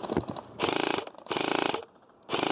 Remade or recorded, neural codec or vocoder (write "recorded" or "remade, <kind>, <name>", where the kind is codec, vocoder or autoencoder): recorded